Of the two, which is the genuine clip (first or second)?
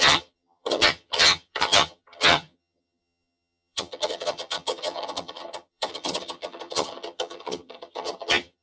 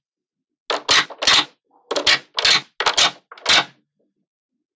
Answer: second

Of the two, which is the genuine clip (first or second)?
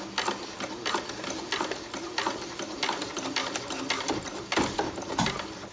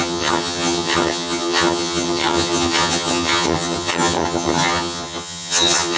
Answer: first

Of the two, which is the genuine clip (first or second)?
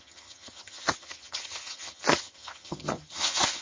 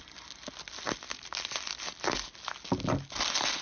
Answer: second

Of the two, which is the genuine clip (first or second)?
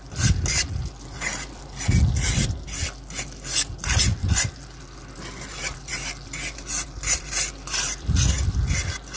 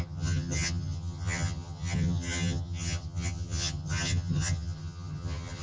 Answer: first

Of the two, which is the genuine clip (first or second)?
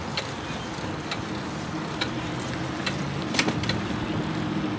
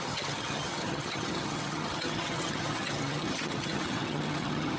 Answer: first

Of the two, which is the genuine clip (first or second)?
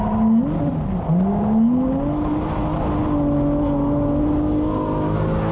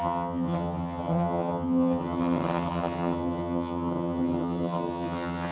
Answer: first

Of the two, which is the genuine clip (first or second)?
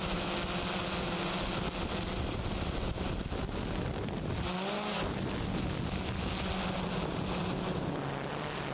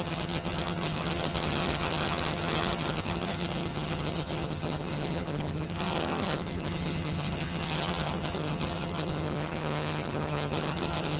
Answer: first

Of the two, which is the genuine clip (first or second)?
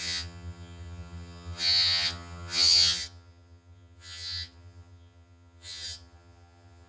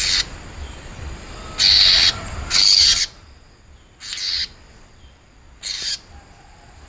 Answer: second